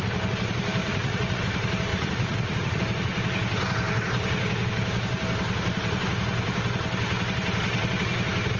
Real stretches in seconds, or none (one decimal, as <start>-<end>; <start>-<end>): 0.0-0.8; 1.4-1.9; 2.8-8.6